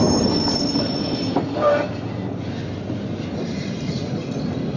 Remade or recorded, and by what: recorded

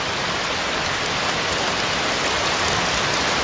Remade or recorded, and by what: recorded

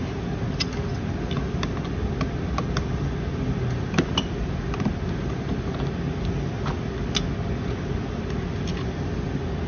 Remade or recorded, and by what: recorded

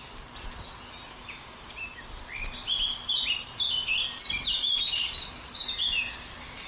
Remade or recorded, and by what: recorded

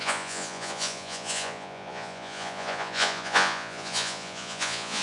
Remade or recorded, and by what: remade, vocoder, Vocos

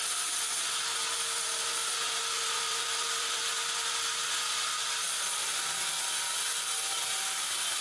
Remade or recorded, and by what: recorded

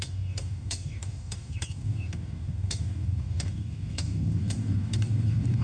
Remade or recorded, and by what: remade, codec, DAC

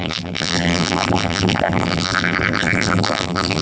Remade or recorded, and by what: remade, vocoder, BigVGAN v2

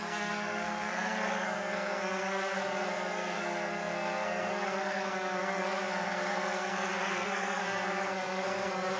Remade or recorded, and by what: remade, codec, SNAC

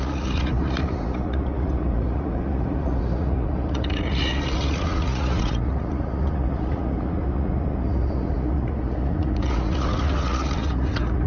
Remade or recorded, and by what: remade, vocoder, Vocos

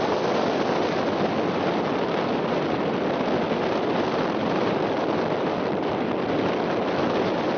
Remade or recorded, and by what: recorded